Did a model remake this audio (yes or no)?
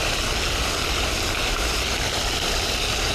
no